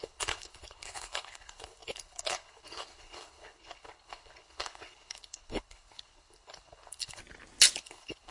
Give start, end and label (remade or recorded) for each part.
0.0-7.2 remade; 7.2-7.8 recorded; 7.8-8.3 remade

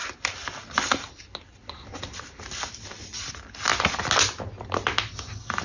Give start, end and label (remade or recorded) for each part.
0.0-5.6 recorded

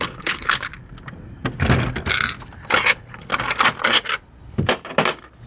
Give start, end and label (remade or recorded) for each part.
0.0-0.7 remade; 0.7-2.9 recorded; 2.9-3.3 remade; 3.3-5.5 recorded

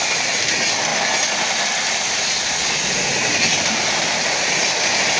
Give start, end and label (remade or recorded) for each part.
0.0-5.2 recorded

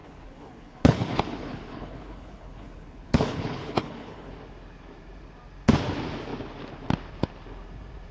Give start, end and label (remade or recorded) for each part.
0.0-4.3 remade; 4.3-8.1 recorded

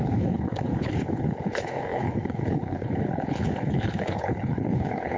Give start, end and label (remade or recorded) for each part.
0.0-5.2 remade

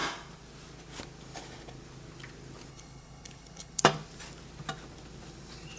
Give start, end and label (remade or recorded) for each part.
0.0-2.7 recorded; 2.7-3.8 remade; 3.8-5.8 recorded